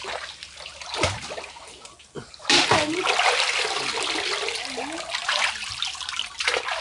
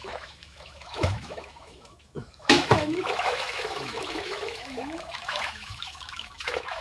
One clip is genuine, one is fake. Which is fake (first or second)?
second